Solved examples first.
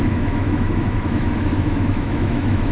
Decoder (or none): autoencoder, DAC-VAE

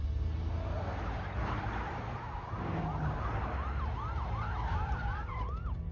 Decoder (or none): none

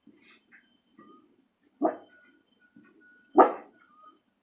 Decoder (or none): vocoder, BigVGAN v2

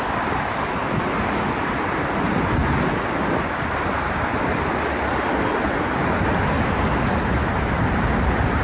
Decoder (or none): none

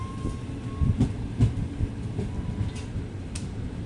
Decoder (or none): none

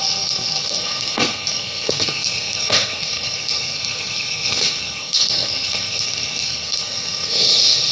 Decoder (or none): codec, SNAC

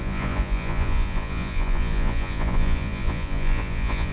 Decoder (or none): vocoder, Vocos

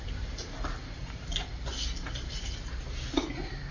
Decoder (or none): none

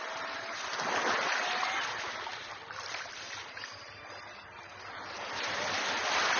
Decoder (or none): vocoder, BigVGAN v2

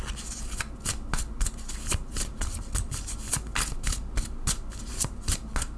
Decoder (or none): none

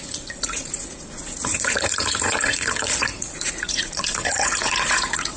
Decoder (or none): vocoder, Vocos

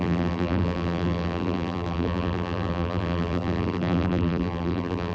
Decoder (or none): vocoder, BigVGAN v2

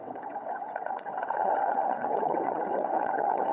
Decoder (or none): vocoder, WaveNeXt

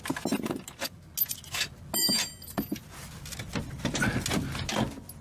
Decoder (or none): none